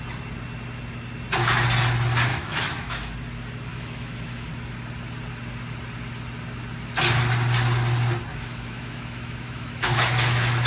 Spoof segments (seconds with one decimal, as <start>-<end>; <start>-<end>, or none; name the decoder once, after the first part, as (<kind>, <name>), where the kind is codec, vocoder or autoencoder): 2.3-3.1 (autoencoder, DAC-VAE); 3.7-4.5; 8.3-10.7